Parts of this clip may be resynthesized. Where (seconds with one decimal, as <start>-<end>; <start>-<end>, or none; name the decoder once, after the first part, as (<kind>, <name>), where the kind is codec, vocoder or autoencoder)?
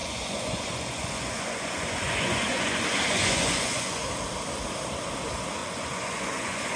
0.0-4.1 (vocoder, Vocos); 5.6-6.8